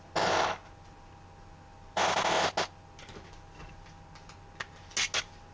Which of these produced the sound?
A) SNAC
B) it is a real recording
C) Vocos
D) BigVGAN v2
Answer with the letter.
B